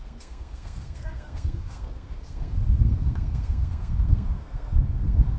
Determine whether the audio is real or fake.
fake